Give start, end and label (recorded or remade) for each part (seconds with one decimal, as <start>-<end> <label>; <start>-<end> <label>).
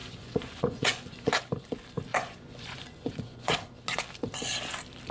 0.0-1.4 remade; 1.4-2.1 recorded; 2.1-3.5 remade; 3.5-5.1 recorded